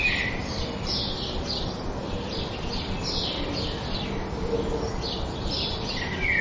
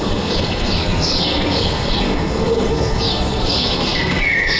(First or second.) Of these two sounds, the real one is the first